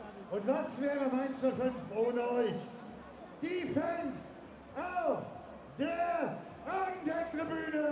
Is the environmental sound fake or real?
real